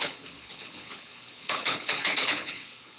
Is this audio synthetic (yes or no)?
yes